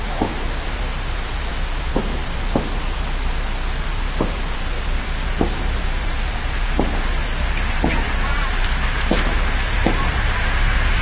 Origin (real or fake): fake